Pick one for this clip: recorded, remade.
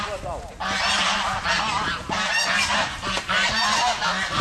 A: recorded